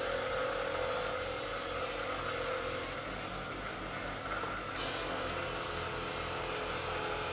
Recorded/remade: recorded